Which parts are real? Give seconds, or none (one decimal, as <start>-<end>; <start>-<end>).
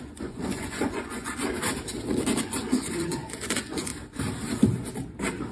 1.4-2.4; 3.9-5.5